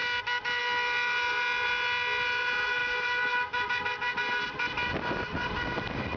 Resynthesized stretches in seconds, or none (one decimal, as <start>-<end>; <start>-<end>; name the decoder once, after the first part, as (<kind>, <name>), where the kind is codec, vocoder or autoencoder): none